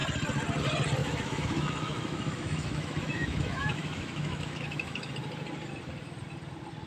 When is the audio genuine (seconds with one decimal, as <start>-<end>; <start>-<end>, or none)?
0.0-1.0; 5.1-6.9